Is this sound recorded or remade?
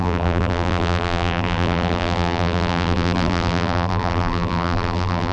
remade